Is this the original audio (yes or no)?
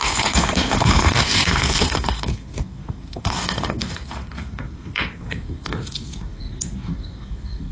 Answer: no